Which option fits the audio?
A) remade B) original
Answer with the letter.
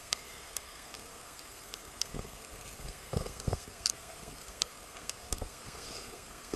A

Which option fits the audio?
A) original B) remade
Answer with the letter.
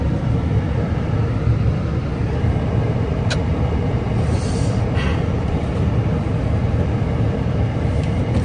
A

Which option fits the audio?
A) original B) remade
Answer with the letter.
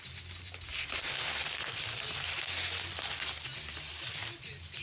A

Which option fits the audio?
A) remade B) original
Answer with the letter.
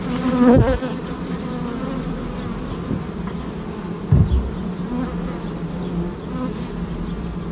B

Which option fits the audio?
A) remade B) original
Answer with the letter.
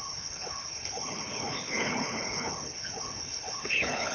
A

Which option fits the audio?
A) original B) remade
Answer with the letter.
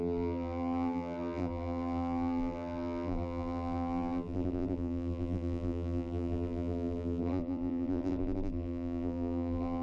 B